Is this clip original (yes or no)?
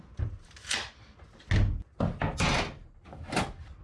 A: yes